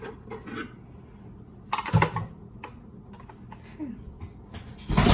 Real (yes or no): yes